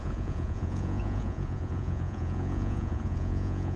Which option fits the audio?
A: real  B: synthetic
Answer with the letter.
B